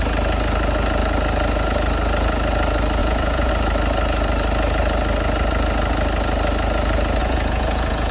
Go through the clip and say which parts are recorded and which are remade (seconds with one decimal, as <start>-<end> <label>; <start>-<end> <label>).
0.0-3.0 recorded; 3.0-3.5 remade; 3.5-7.2 recorded; 7.2-8.1 remade